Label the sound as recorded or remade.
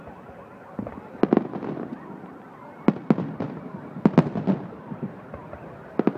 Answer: recorded